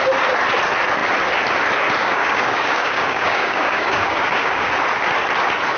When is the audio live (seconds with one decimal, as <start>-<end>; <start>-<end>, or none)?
0.0-2.0; 4.7-5.8